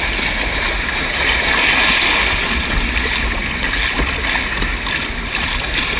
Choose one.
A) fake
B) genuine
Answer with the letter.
B